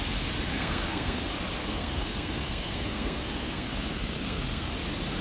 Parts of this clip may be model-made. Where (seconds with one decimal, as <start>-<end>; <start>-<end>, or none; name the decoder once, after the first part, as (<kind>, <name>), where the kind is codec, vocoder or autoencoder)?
0.5-1.2 (codec, SNAC); 1.6-4.7